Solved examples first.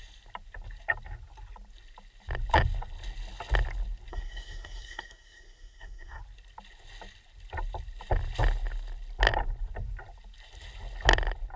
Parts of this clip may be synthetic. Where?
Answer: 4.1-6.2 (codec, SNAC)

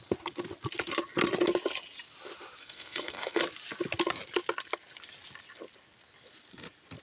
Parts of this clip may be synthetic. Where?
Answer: 2.6-3.4 (codec, SNAC)

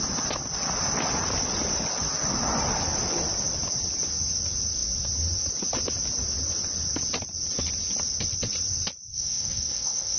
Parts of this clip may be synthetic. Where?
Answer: 9.1-10.2 (codec, SNAC)

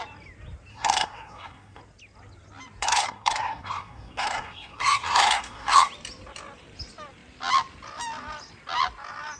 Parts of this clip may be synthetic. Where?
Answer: 0.7-1.8 (codec, SNAC); 2.8-5.9

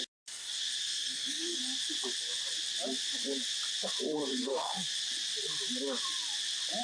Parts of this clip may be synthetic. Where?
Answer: 0.8-1.6 (codec, SNAC); 4.3-4.9

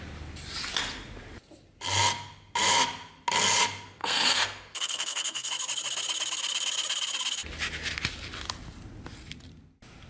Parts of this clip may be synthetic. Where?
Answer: 4.0-5.5 (codec, SNAC)

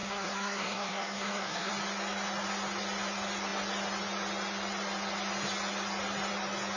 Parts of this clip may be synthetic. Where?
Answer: 0.0-1.7 (codec, SNAC)